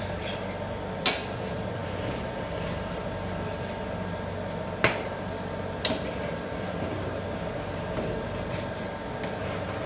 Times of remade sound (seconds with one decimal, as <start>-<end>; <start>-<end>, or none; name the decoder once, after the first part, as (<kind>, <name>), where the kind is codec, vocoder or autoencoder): none